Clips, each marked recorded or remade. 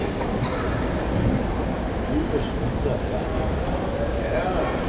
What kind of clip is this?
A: recorded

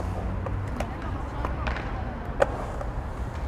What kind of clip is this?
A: recorded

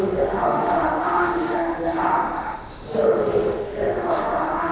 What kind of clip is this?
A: remade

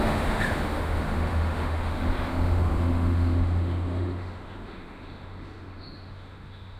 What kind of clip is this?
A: remade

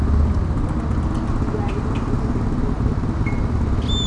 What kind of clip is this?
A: recorded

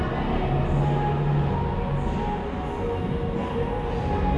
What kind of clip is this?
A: recorded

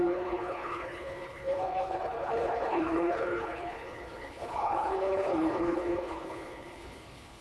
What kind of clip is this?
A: remade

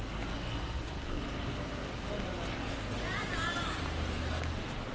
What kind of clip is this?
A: recorded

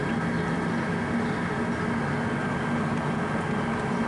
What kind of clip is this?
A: recorded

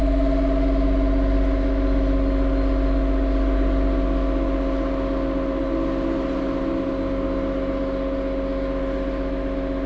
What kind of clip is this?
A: recorded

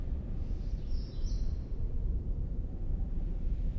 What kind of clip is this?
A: remade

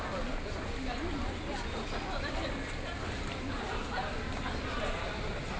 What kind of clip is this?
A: recorded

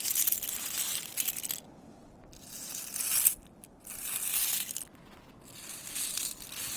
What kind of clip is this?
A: recorded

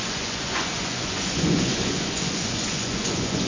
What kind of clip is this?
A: remade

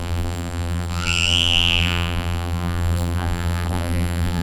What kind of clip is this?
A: remade